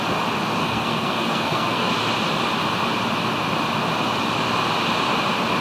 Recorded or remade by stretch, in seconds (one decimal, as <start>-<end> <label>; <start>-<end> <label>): 0.0-0.6 recorded; 0.6-1.9 remade; 1.9-5.6 recorded